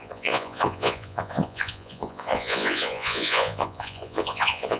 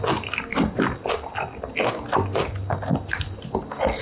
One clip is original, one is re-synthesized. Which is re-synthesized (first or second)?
first